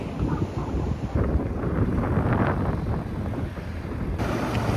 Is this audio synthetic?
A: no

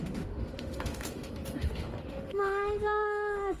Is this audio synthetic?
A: yes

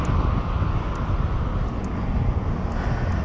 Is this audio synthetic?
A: no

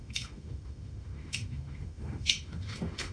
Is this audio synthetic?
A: yes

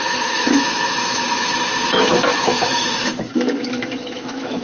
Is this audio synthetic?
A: yes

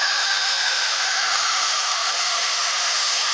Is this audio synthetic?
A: yes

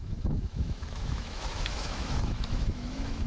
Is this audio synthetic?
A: yes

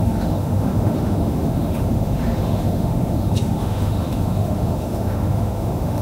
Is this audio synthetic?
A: yes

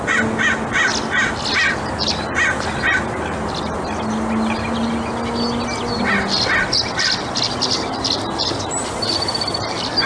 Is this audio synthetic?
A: no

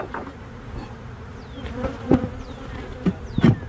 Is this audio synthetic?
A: no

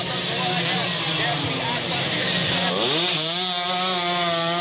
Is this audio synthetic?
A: no